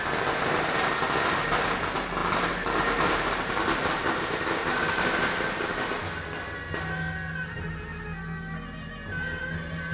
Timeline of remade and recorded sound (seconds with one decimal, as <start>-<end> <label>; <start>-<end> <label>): 0.0-2.2 recorded; 2.2-5.7 remade; 5.7-9.9 recorded